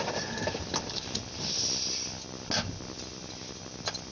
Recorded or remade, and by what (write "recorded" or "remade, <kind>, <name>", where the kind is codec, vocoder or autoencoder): recorded